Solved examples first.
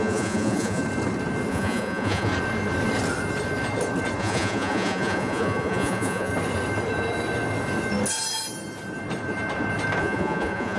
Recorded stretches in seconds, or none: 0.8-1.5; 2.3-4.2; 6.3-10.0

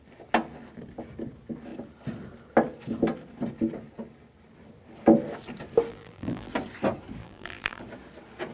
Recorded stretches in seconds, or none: 0.0-5.9; 6.5-7.2; 7.8-8.5

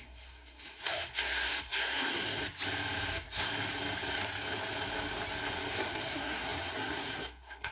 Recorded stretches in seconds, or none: 2.4-3.1; 3.5-5.7

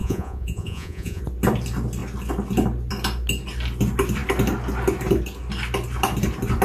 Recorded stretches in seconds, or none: 1.2-6.6

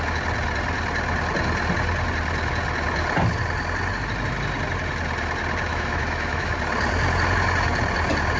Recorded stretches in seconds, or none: 0.0-5.7; 6.6-8.4